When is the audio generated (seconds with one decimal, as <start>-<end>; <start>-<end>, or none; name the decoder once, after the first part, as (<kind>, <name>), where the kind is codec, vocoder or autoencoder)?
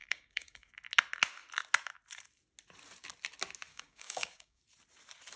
0.0-0.7 (codec, DAC); 3.7-4.6